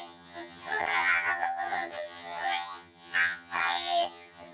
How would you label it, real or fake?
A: fake